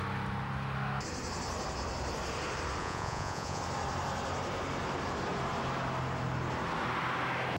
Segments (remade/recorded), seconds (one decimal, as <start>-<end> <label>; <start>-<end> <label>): 0.0-2.8 recorded; 2.8-3.6 remade; 3.6-7.6 recorded